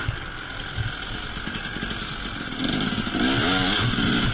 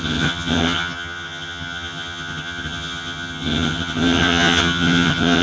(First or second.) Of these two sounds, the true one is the first